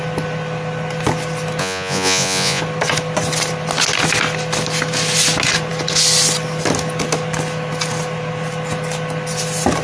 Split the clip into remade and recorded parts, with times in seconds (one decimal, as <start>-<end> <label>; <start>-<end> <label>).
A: 0.0-1.6 recorded; 1.6-2.6 remade; 2.6-9.8 recorded